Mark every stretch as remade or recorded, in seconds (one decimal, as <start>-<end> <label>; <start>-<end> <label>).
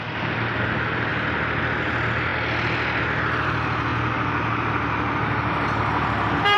0.0-6.6 recorded